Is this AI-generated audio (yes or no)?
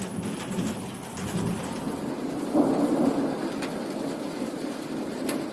no